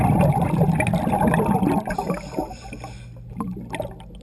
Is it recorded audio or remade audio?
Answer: recorded